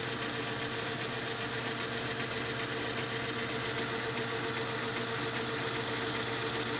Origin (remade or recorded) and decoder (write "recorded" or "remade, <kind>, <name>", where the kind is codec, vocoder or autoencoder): recorded